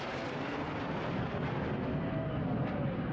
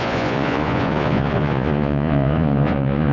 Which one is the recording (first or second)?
first